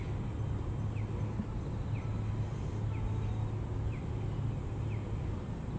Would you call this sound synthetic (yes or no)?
no